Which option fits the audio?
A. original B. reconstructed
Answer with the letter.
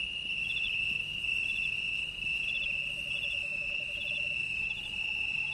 A